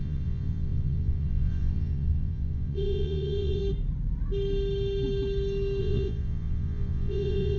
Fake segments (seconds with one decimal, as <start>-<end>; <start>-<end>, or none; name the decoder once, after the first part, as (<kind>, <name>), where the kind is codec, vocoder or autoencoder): 0.0-3.6 (vocoder, Vocos); 5.8-7.6